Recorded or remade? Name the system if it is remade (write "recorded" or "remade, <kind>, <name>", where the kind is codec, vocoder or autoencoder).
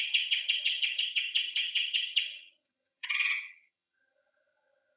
remade, vocoder, HiFi-GAN